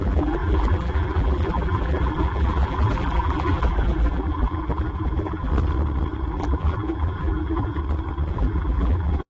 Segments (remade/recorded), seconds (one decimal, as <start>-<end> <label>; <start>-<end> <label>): 0.0-5.5 remade; 5.5-6.3 recorded; 6.3-7.8 remade; 7.8-8.3 recorded; 8.3-9.3 remade